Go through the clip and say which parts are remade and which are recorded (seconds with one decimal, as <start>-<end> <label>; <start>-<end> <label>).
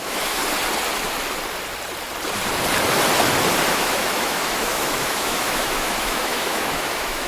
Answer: 0.0-0.4 remade; 0.4-3.7 recorded; 3.7-7.3 remade